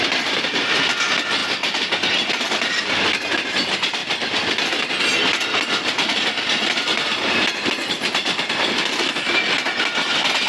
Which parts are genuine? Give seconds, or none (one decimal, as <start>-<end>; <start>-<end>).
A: 0.0-10.5